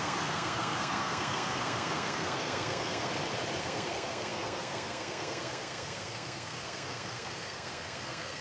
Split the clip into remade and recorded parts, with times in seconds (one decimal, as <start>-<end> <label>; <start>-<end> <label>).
0.0-3.1 remade; 3.1-3.6 recorded; 3.6-8.4 remade